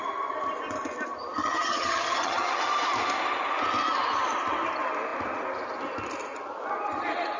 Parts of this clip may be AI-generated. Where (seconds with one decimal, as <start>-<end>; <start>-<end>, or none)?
1.4-2.6